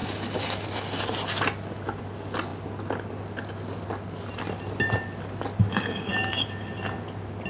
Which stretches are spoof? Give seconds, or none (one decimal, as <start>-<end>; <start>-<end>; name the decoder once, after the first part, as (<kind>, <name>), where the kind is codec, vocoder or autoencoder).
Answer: none

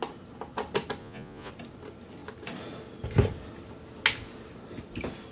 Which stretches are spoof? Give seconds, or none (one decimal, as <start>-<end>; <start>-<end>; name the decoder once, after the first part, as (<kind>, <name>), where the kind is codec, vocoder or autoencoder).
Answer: 1.0-1.5 (vocoder, Vocos)